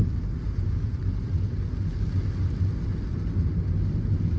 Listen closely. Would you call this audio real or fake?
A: real